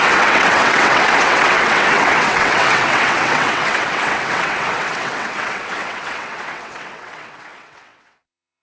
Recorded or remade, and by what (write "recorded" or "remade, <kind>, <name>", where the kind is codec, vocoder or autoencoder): remade, vocoder, WaveNeXt